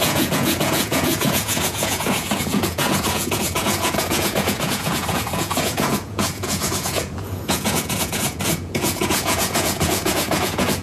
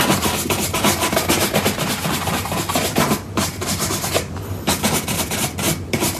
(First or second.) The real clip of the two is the second